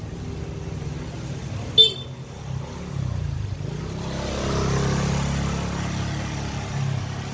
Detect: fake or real real